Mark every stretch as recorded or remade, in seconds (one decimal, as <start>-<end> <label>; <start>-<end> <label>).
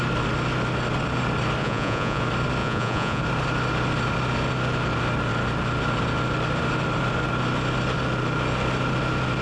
0.0-1.6 recorded; 1.6-2.2 remade; 2.2-2.6 recorded; 2.6-3.2 remade; 3.2-9.4 recorded